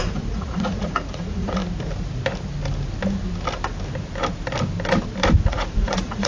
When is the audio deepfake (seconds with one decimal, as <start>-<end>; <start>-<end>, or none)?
0.0-1.6; 5.4-6.3